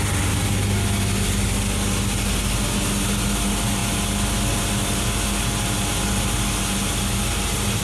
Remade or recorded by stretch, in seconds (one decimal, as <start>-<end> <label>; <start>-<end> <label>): 0.0-7.8 recorded